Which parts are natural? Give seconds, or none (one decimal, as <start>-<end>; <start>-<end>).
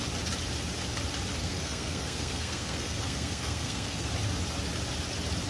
0.0-1.4; 4.1-5.5